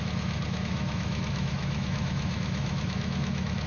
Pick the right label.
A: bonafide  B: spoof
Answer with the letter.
B